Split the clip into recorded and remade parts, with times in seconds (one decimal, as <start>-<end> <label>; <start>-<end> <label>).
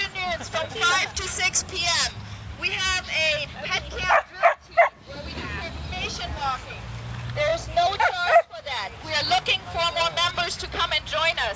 0.0-11.6 recorded